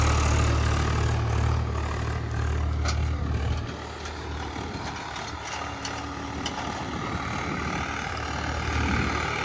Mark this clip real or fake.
real